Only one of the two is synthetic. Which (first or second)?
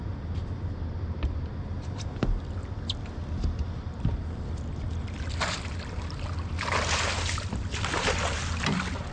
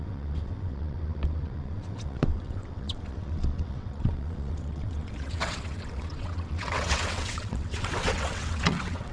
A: second